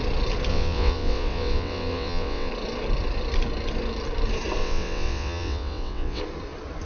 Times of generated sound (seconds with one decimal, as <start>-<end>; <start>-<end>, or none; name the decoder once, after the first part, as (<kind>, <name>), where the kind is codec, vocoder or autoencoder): 0.5-2.5 (vocoder, WaveNeXt); 4.6-6.2